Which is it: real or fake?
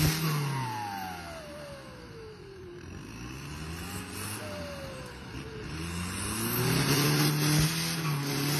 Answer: real